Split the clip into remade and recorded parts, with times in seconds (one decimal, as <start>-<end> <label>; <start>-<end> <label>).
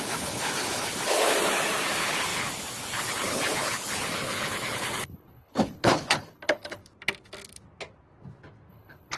0.0-1.3 remade; 1.3-1.9 recorded; 1.9-6.8 remade; 6.8-8.7 recorded; 8.7-9.2 remade